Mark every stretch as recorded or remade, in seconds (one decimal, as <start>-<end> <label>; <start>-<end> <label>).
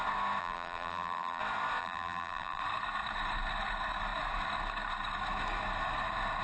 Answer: 0.0-0.4 recorded; 0.4-1.4 remade; 1.4-1.8 recorded; 1.8-2.6 remade; 2.6-6.4 recorded